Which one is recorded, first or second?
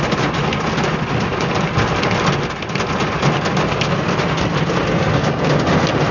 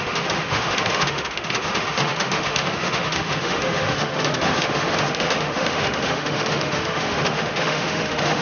first